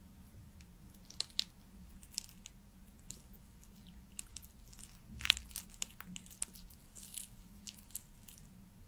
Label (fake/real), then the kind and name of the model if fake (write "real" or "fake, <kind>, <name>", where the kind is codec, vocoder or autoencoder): real